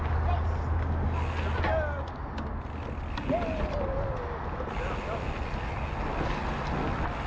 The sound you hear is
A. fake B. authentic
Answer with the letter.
B